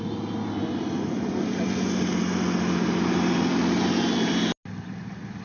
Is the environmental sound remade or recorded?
recorded